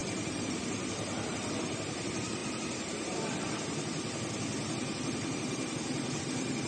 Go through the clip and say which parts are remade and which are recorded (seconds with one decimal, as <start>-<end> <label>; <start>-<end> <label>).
0.0-1.5 remade; 1.5-6.7 recorded